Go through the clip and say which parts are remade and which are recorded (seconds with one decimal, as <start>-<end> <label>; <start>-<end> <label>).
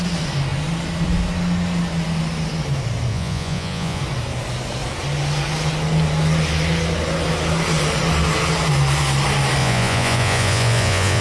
0.0-3.1 recorded; 3.1-4.0 remade; 4.0-9.6 recorded; 9.6-11.2 remade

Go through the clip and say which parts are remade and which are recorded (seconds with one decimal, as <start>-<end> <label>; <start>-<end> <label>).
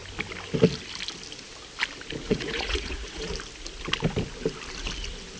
0.0-2.2 recorded; 2.2-3.3 remade; 3.3-5.4 recorded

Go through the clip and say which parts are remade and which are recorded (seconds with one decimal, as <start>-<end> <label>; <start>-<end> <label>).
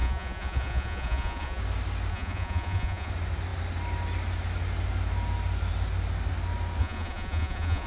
0.0-1.6 remade; 1.6-2.1 recorded; 2.1-3.1 remade; 3.1-6.8 recorded; 6.8-7.9 remade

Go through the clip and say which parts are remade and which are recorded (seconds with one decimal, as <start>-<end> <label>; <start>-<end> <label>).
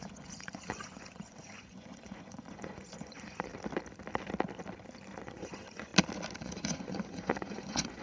0.0-3.5 remade; 3.5-5.2 recorded; 5.2-5.9 remade; 5.9-6.4 recorded; 6.4-8.0 remade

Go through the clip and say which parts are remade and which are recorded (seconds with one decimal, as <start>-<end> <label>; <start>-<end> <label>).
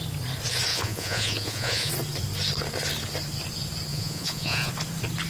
0.0-0.7 recorded; 0.7-1.9 remade; 1.9-3.9 recorded; 3.9-4.7 remade; 4.7-5.3 recorded